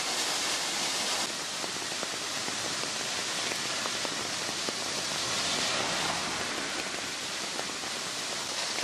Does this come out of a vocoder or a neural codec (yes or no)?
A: yes